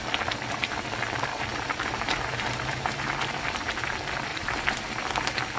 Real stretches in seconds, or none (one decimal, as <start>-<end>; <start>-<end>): 0.0-1.3; 3.7-4.3; 4.8-5.6